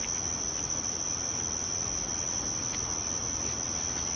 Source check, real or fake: real